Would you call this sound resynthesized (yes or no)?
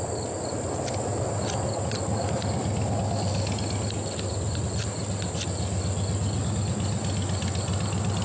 no